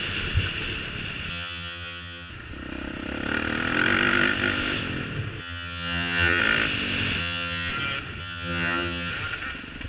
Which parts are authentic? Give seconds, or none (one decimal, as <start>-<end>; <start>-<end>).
0.0-1.3; 2.3-5.4; 6.4-7.2; 7.7-8.2; 9.1-9.9